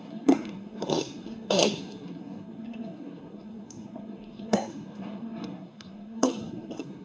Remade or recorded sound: remade